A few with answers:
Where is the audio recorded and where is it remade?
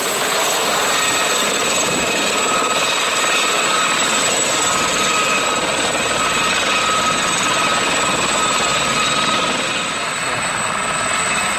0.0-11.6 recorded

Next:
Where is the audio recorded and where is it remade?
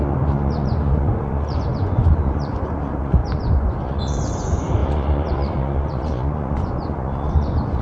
0.0-7.8 remade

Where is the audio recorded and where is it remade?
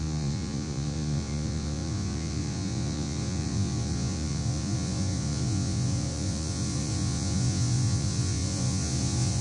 0.0-9.4 remade